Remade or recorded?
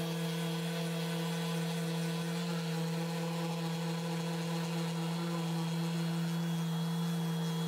recorded